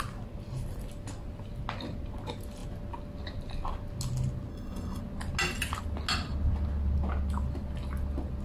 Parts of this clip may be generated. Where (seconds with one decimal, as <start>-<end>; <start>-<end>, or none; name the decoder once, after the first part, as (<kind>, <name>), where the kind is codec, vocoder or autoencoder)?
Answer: 4.5-5.0 (codec, SNAC)